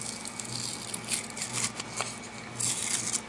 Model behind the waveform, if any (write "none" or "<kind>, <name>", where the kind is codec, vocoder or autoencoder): none